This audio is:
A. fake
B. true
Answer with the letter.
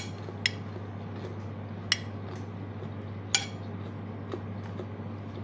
B